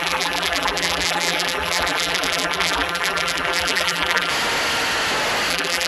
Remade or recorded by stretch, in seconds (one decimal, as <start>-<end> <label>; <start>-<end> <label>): 0.0-4.3 remade; 4.3-5.5 recorded; 5.5-5.9 remade